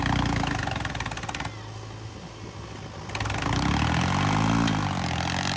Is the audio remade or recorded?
recorded